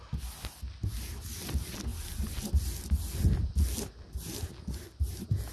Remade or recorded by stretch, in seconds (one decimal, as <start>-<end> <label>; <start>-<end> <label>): 0.0-5.5 recorded